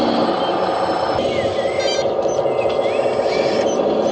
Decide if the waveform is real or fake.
real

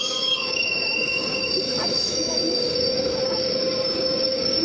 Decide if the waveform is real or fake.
fake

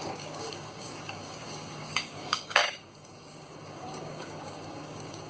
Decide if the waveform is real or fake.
fake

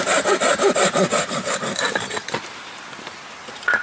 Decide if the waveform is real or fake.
real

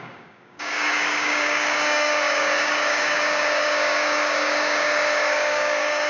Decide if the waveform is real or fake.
fake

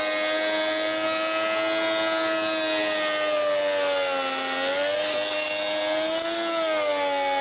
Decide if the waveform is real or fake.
real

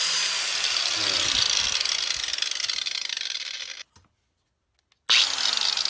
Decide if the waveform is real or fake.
real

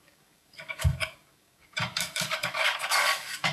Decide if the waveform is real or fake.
fake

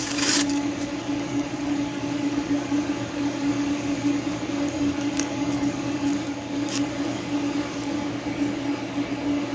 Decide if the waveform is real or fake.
fake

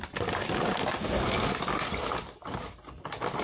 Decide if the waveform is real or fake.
real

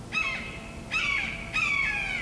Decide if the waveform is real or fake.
real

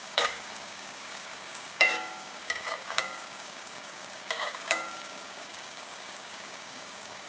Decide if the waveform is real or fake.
fake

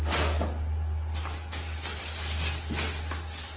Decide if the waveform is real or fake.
real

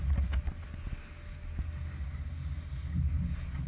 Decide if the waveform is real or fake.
real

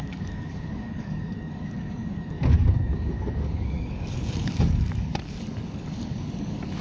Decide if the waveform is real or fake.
fake